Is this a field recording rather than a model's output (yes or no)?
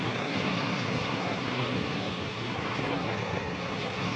no